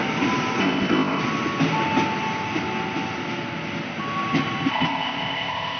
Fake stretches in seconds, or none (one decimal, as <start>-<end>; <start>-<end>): 0.6-1.2; 4.7-5.8